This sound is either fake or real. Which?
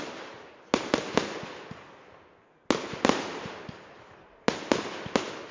real